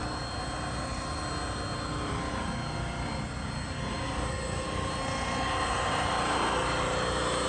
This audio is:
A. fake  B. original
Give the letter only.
B